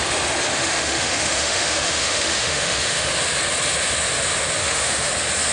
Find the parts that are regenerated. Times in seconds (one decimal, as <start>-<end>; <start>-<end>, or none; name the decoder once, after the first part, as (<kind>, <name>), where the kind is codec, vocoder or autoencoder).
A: 0.5-3.1 (autoencoder, DAC-VAE); 4.6-5.1